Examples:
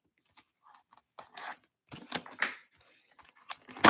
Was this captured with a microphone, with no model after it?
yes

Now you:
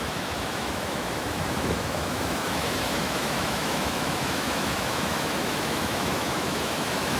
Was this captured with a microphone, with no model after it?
no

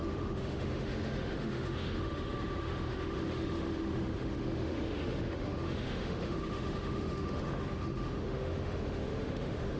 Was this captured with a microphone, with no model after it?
no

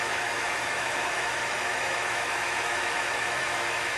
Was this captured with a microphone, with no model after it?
no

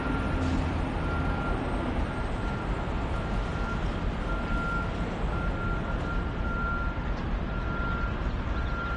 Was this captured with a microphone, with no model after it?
yes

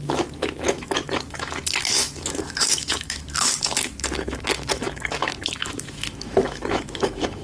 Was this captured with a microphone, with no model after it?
no